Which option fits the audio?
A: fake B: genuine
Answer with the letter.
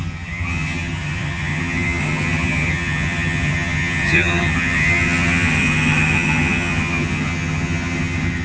A